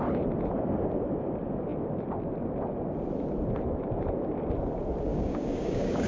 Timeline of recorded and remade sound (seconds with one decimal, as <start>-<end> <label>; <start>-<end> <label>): 0.0-5.1 recorded; 5.1-6.1 remade